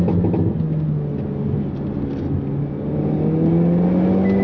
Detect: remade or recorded recorded